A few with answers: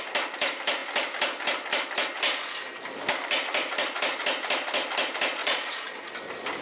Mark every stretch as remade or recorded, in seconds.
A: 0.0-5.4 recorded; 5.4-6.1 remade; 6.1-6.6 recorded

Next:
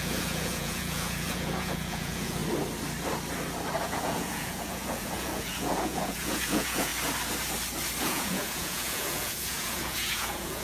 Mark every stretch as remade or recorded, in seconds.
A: 0.0-2.4 remade; 2.4-3.8 recorded; 3.8-6.9 remade; 6.9-8.0 recorded; 8.0-10.6 remade

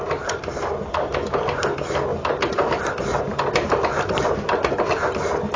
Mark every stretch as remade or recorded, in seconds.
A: 0.0-2.1 recorded; 2.1-4.8 remade; 4.8-5.6 recorded